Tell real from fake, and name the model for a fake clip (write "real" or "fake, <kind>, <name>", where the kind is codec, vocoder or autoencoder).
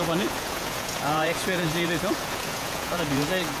fake, vocoder, Vocos